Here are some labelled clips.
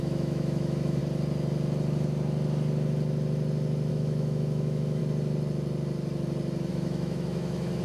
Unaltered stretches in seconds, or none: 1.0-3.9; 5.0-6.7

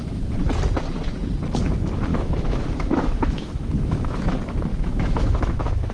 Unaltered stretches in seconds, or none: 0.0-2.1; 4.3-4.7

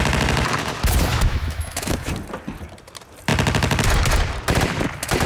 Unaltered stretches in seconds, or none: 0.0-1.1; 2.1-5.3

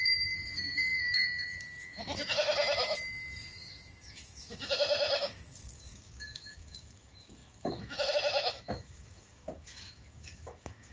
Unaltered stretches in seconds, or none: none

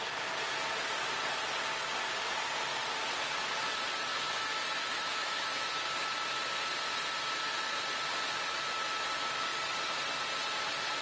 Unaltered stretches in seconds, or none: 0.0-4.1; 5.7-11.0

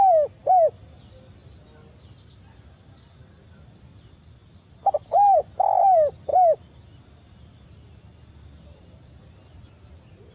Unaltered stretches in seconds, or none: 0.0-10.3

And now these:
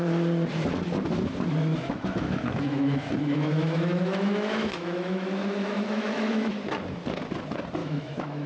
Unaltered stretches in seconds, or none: 0.0-1.7; 6.5-7.8